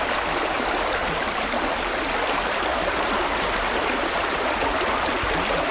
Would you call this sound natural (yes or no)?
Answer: yes